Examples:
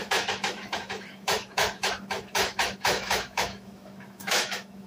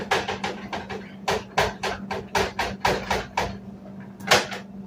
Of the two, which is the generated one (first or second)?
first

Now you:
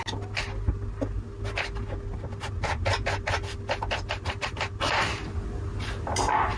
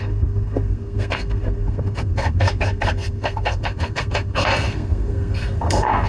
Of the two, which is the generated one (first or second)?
second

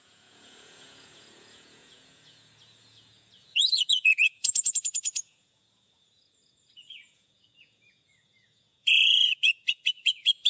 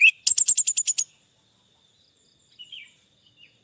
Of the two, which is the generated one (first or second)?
first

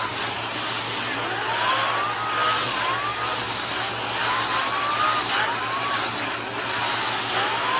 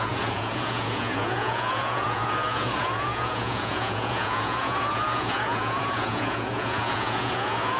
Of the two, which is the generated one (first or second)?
second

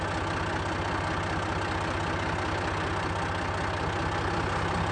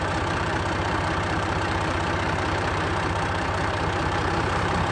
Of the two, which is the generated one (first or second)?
second